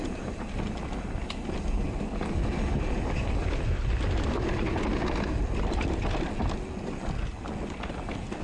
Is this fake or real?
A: real